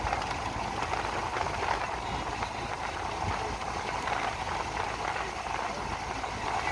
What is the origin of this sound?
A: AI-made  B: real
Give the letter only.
B